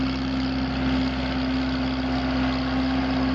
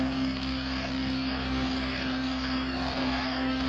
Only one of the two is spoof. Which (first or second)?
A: second